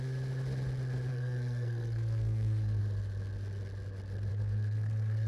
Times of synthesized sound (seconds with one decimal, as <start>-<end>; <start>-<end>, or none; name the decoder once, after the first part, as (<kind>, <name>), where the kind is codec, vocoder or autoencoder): 1.1-2.8 (codec, SNAC); 4.3-5.3